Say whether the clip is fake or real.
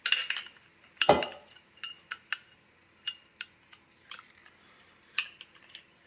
real